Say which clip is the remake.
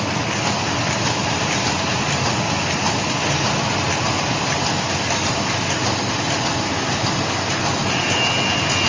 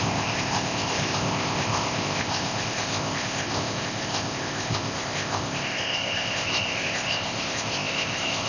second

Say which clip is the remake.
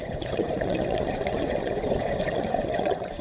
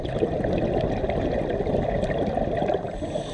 first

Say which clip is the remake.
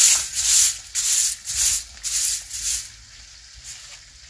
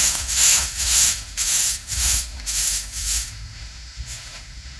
second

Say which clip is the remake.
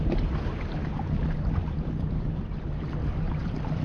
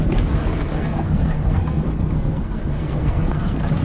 second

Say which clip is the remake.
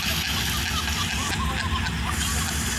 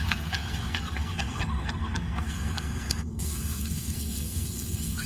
second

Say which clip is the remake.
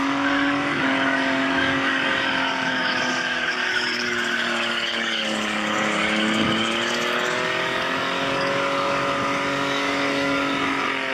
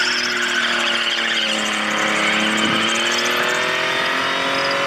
first